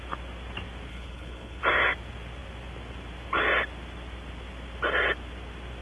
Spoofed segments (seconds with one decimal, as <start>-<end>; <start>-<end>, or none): 0.9-1.6